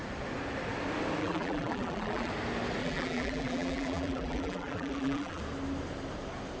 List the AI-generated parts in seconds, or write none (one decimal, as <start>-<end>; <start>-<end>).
1.2-2.3; 2.8-5.4